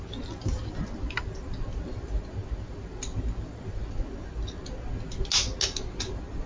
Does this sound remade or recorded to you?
recorded